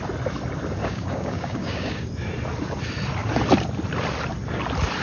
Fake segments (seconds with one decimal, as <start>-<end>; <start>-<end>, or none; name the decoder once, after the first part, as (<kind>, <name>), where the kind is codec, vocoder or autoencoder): 0.8-2.1 (codec, DAC)